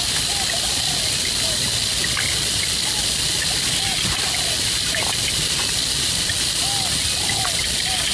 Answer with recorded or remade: recorded